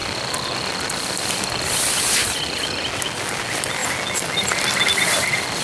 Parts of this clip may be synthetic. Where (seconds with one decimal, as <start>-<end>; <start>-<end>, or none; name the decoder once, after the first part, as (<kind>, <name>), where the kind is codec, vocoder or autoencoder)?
none